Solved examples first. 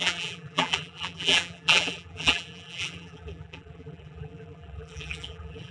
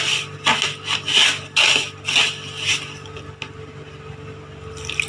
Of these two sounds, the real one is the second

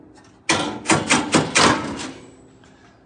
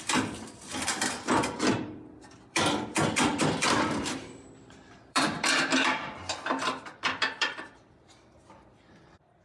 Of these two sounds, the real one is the first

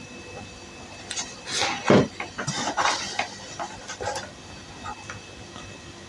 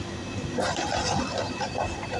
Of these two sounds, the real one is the first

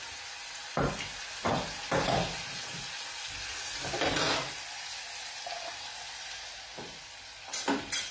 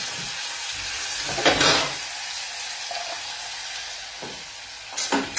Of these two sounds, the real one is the second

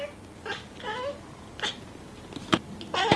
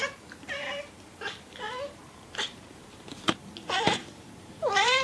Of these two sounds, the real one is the first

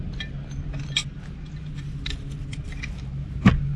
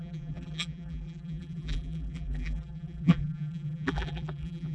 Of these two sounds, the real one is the first